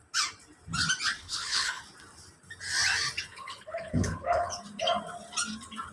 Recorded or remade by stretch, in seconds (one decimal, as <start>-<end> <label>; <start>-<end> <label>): 0.0-1.2 recorded; 1.2-1.8 remade; 1.8-3.3 recorded; 3.3-4.6 remade; 4.6-5.9 recorded